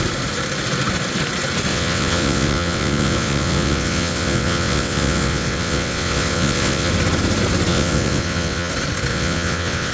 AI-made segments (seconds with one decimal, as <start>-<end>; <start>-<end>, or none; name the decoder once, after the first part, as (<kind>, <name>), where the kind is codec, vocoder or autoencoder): 1.7-6.9 (vocoder, WaveNeXt); 7.7-8.7; 9.1-9.9